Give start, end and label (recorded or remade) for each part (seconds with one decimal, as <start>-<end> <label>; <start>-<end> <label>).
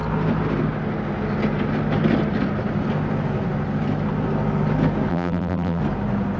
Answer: 0.0-5.1 recorded; 5.1-5.8 remade; 5.8-6.4 recorded